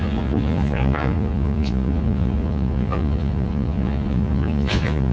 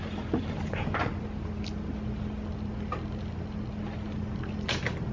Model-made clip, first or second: first